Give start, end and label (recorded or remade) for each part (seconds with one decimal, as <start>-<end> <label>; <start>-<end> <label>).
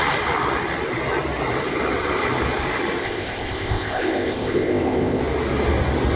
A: 0.0-3.0 recorded; 3.0-5.2 remade; 5.2-6.2 recorded